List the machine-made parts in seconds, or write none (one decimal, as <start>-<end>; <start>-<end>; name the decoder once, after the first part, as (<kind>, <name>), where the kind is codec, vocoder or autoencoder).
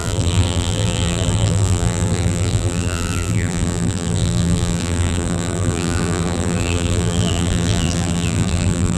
0.0-9.0 (vocoder, BigVGAN v2)